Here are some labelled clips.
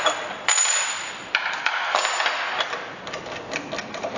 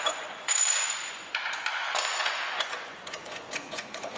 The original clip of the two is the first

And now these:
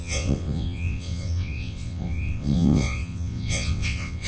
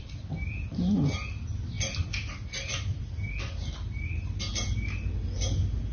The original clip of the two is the second